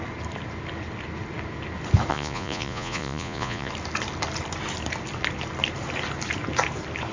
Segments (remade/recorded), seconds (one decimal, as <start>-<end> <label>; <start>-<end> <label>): 0.0-2.1 recorded; 2.1-3.7 remade; 3.7-7.1 recorded